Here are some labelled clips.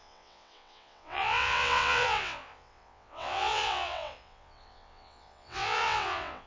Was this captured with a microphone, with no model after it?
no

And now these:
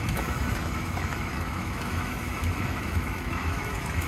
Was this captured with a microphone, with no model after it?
no